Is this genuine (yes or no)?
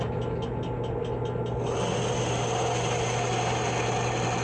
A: yes